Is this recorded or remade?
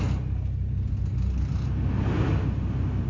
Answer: recorded